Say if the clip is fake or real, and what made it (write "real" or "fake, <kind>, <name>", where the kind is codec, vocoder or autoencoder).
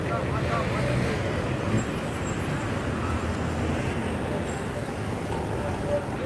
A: real